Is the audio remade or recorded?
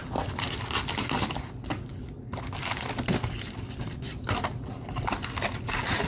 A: recorded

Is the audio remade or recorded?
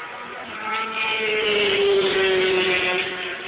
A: remade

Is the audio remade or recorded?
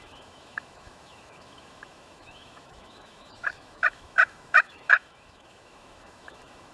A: remade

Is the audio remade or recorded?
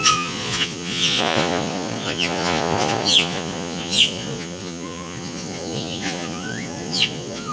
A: remade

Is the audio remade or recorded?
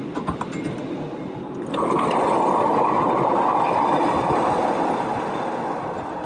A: recorded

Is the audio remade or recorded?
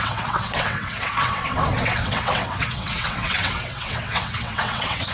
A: remade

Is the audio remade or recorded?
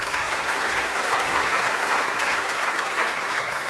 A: remade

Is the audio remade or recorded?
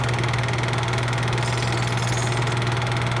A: recorded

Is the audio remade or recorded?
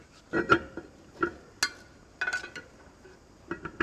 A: recorded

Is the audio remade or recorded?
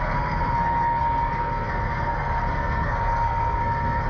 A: remade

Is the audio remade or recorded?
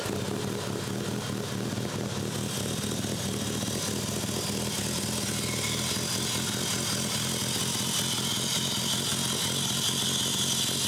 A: recorded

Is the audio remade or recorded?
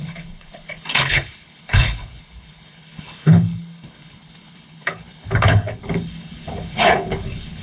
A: remade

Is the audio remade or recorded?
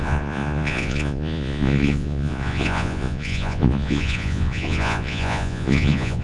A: remade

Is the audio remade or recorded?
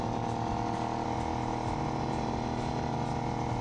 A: recorded